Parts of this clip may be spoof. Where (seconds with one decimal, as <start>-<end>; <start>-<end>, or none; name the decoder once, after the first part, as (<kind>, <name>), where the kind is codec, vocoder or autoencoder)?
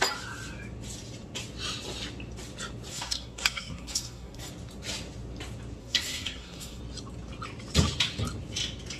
2.9-4.5 (codec, SNAC); 5.8-6.8